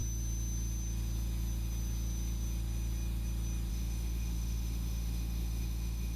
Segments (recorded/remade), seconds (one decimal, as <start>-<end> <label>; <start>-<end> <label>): 0.0-3.7 recorded; 3.7-6.2 remade